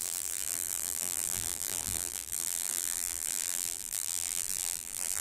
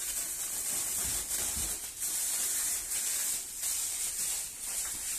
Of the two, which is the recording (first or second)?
second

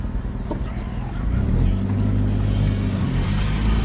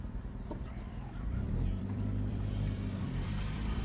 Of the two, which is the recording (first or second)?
first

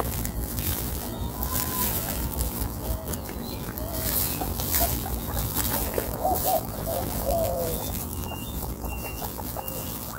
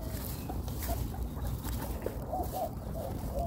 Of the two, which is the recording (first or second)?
second